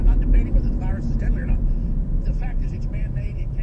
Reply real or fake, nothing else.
real